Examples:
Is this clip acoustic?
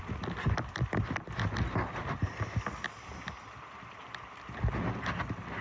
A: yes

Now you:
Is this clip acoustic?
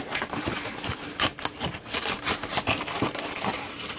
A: yes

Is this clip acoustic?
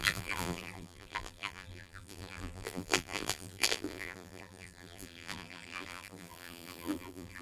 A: no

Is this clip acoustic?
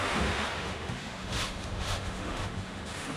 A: no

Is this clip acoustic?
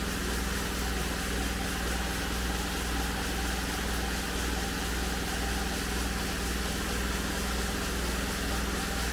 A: yes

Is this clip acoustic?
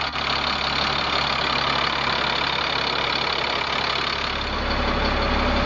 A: yes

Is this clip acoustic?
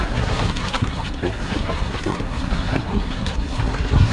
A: no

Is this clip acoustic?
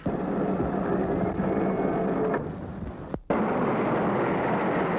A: yes